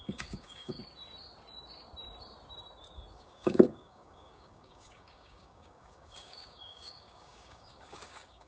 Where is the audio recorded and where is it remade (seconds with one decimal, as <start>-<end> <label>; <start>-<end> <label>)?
0.0-0.8 remade; 0.8-3.1 recorded; 3.1-8.5 remade

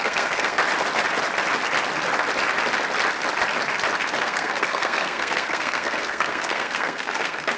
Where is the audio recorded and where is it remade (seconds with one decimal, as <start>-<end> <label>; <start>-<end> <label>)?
0.0-0.6 remade; 0.6-4.2 recorded; 4.2-7.6 remade

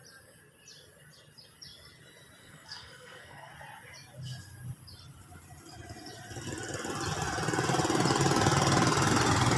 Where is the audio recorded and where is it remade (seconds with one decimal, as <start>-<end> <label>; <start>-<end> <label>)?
0.0-2.4 recorded; 2.4-3.5 remade; 3.5-9.6 recorded

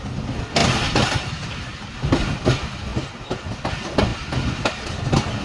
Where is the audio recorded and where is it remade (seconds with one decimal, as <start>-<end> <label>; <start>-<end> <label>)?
0.0-0.6 recorded; 0.6-1.9 remade; 1.9-4.1 recorded; 4.1-5.0 remade; 5.0-5.4 recorded